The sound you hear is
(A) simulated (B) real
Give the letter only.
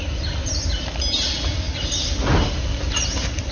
B